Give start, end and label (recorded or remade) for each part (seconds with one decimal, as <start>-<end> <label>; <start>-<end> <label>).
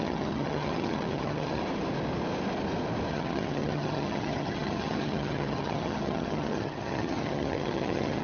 0.0-1.6 remade; 1.6-3.1 recorded; 3.1-8.2 remade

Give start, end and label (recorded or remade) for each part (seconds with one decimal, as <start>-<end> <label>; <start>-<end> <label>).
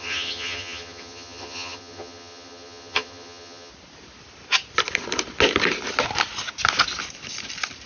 0.0-3.7 remade; 3.7-7.9 recorded